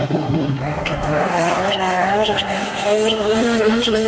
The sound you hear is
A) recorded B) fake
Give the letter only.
B